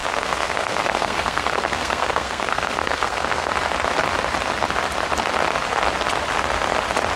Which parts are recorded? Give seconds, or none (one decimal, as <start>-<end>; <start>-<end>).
3.5-7.2